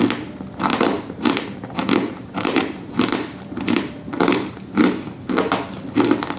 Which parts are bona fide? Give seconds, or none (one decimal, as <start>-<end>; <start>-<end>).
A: 0.0-0.7; 4.5-6.4